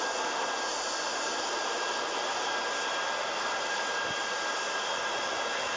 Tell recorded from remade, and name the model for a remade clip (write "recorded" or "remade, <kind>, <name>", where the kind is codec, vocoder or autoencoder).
recorded